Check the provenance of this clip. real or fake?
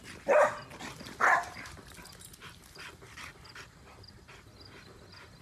fake